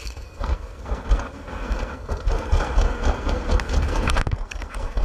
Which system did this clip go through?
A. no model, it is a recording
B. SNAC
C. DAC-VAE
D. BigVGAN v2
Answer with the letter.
B